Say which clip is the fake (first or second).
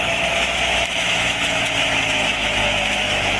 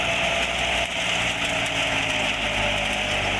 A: first